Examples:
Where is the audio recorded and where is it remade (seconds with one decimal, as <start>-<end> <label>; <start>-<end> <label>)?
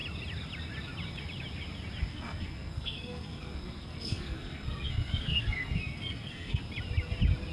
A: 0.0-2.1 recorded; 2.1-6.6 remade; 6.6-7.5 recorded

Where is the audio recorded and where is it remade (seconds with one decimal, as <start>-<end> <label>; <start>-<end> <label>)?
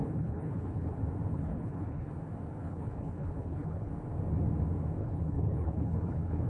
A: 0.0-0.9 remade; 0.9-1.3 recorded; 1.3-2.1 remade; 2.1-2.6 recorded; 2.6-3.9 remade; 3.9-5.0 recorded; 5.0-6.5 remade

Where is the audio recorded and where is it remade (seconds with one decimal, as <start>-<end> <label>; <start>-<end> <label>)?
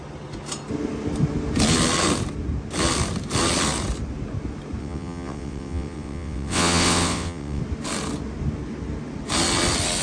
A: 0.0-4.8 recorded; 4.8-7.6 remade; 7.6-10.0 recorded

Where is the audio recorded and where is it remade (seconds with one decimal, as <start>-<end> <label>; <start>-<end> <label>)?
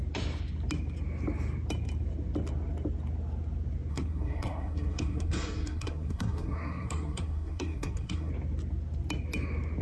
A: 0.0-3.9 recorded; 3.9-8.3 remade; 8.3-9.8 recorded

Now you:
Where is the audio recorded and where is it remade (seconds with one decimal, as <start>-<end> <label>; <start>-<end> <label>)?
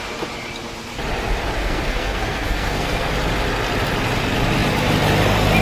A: 0.0-1.6 recorded; 1.6-3.1 remade; 3.1-5.6 recorded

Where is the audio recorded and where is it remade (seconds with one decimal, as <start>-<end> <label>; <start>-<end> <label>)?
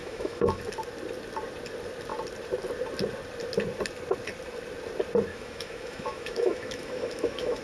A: 0.0-0.6 remade; 0.6-5.3 recorded; 5.3-7.6 remade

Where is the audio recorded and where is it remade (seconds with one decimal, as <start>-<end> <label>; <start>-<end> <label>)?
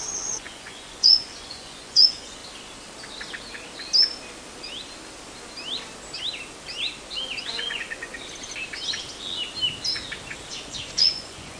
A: 0.0-2.4 remade; 2.4-7.4 recorded; 7.4-8.1 remade; 8.1-10.5 recorded; 10.5-11.6 remade